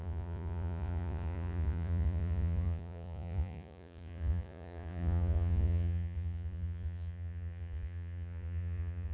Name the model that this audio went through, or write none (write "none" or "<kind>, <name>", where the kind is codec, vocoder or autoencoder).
vocoder, Vocos